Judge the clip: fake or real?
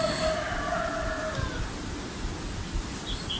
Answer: real